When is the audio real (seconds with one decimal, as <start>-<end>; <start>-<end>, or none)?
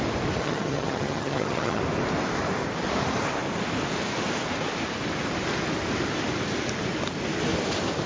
0.0-0.4; 1.8-8.1